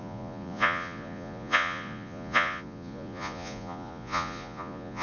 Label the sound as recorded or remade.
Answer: remade